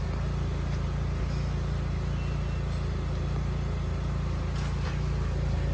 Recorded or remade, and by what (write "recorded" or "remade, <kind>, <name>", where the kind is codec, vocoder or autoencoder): recorded